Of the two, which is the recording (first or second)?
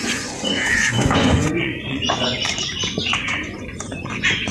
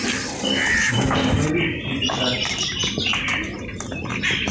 second